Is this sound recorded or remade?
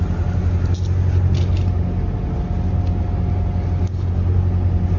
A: recorded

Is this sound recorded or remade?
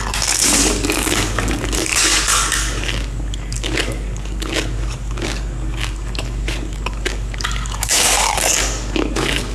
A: remade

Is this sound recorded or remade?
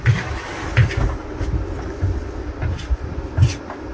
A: recorded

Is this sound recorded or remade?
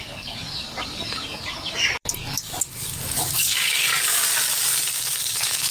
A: remade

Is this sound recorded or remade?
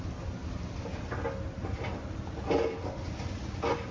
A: recorded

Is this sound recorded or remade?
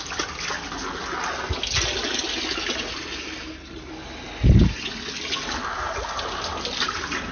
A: recorded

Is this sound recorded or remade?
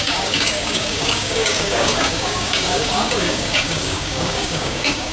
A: remade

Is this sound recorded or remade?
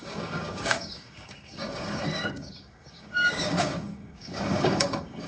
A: remade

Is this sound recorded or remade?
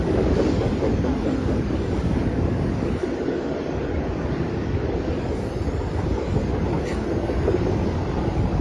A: remade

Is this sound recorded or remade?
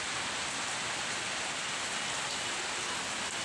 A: recorded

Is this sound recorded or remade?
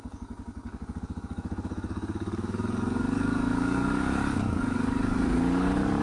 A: remade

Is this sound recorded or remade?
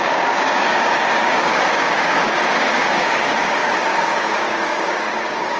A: remade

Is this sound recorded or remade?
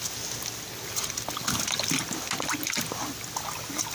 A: recorded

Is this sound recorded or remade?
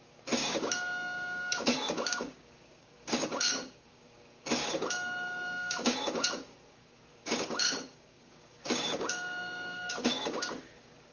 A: remade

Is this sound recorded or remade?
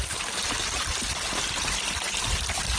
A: recorded